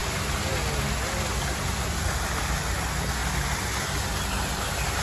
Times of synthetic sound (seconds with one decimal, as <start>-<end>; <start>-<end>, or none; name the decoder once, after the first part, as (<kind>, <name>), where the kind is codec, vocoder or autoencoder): none